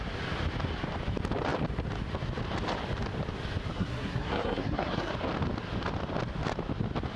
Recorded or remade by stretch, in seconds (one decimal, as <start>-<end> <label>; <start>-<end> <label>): 0.0-3.7 recorded; 3.7-5.1 remade; 5.1-7.2 recorded

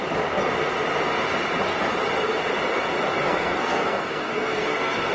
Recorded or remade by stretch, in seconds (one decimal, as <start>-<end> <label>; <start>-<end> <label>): 0.0-3.2 recorded; 3.2-5.1 remade

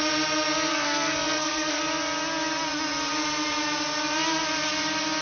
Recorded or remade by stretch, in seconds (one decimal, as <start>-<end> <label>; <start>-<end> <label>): 0.0-0.7 recorded; 0.7-1.8 remade; 1.8-5.2 recorded

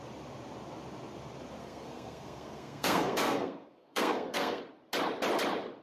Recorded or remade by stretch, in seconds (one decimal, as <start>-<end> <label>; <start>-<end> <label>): 0.0-1.6 recorded; 1.6-4.6 remade; 4.6-5.8 recorded

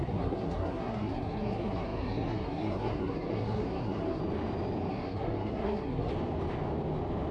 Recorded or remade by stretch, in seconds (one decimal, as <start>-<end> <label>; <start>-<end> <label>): 0.0-4.2 remade; 4.2-4.9 recorded; 4.9-6.1 remade; 6.1-7.3 recorded

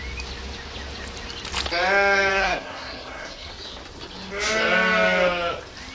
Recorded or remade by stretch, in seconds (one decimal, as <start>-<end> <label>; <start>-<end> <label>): 0.0-2.3 recorded; 2.3-3.5 remade; 3.5-5.9 recorded

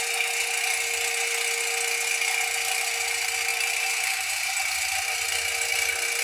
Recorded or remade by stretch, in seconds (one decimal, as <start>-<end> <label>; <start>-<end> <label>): 0.0-6.2 recorded